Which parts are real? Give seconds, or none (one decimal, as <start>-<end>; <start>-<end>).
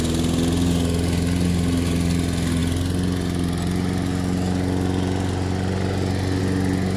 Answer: 0.0-7.0